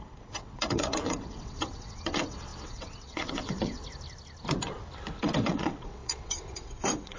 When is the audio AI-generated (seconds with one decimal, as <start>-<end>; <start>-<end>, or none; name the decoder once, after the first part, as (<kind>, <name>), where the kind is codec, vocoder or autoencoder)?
0.0-3.8 (vocoder, WaveNeXt); 5.2-7.2